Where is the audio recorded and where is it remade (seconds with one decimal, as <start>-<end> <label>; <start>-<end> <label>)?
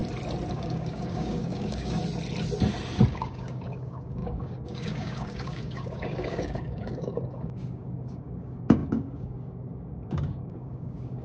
0.0-0.5 recorded; 0.5-2.0 remade; 2.0-3.1 recorded; 3.1-11.2 remade